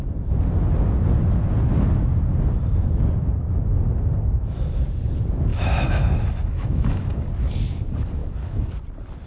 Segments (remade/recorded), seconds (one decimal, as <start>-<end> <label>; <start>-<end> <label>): 0.0-5.5 recorded; 5.5-7.3 remade; 7.3-8.2 recorded; 8.2-8.7 remade; 8.7-9.3 recorded